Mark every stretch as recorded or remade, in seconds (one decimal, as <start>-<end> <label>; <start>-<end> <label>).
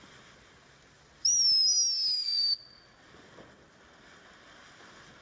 0.0-5.2 recorded